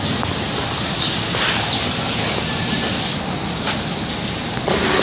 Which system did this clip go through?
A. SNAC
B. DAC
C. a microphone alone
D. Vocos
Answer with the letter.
C